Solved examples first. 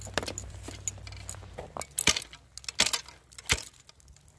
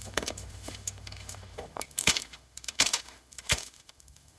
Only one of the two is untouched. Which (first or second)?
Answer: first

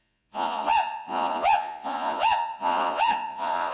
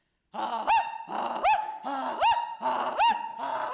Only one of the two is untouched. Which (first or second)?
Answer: second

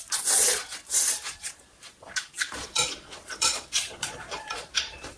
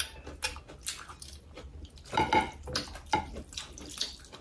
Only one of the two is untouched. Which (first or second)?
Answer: second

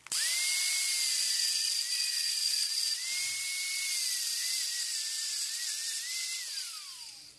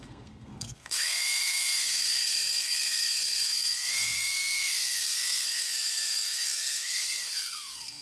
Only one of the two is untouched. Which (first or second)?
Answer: first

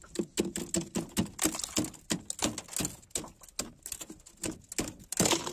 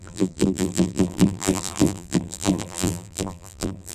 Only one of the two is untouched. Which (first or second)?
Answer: first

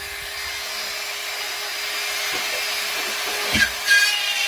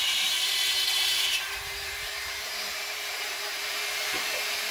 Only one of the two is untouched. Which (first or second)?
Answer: first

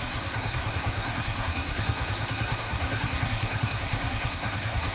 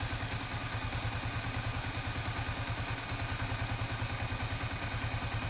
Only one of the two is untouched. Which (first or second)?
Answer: second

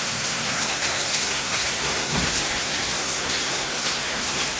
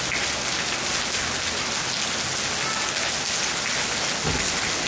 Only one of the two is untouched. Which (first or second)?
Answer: second